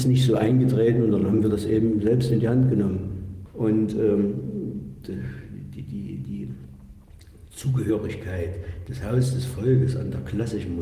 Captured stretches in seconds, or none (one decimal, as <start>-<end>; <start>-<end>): 0.0-1.2; 2.0-7.4; 7.9-10.8